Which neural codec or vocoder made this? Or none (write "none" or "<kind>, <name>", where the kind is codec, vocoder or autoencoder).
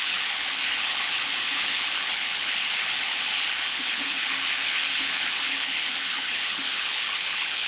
codec, HILCodec